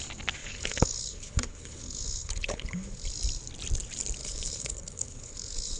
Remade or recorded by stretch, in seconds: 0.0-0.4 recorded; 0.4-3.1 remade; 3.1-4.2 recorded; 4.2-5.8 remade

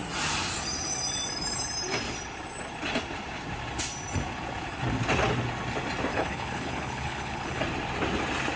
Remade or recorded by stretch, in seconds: 0.0-6.1 recorded; 6.1-7.6 remade; 7.6-8.6 recorded

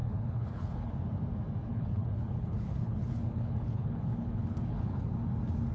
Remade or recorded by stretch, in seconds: 0.0-0.9 remade; 0.9-1.7 recorded; 1.7-5.1 remade; 5.1-5.7 recorded

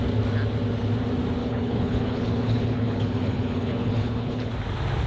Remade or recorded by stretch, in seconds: 0.0-1.4 recorded; 1.4-4.5 remade; 4.5-5.1 recorded

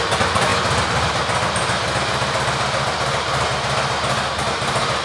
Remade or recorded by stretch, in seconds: 0.0-5.0 recorded

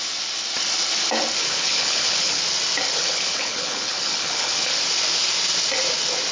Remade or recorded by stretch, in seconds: 0.0-1.4 recorded; 1.4-2.4 remade; 2.4-3.0 recorded; 3.0-4.7 remade; 4.7-6.3 recorded

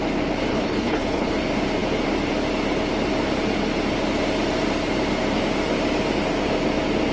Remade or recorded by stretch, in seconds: 0.0-0.5 recorded; 0.5-1.3 remade; 1.3-7.1 recorded

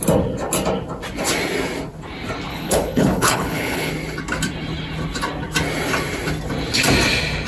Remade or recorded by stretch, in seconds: 0.0-2.5 recorded; 2.5-3.9 remade; 3.9-7.5 recorded